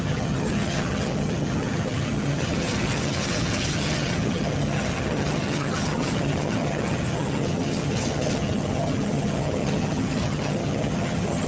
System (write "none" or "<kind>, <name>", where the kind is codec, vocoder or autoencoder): vocoder, HiFi-GAN